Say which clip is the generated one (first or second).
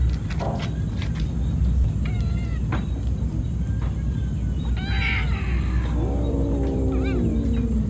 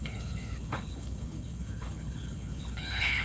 second